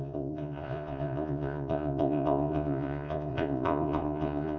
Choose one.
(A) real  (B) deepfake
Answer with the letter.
B